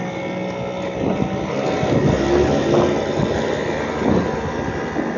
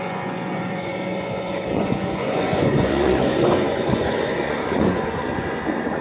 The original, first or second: first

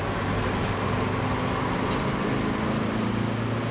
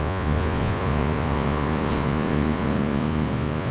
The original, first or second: first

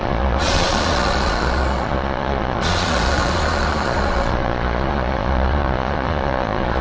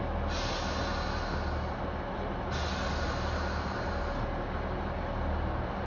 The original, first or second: second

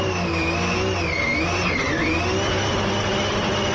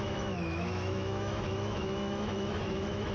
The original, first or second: first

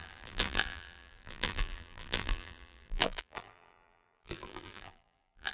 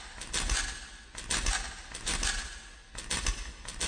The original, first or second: second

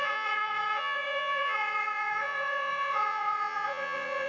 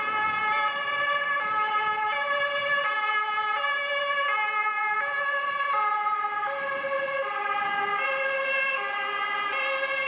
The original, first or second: second